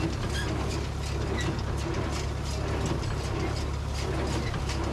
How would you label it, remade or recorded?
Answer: recorded